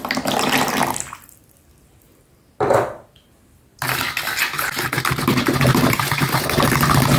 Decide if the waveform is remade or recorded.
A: recorded